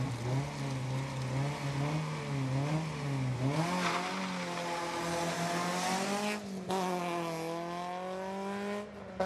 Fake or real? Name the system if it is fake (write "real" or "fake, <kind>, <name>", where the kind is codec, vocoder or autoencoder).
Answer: real